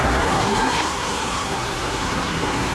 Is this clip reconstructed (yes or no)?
yes